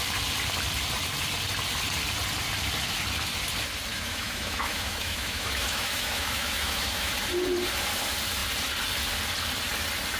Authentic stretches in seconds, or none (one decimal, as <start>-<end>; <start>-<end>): 0.0-3.9; 7.1-10.2